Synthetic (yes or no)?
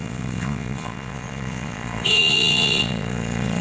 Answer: yes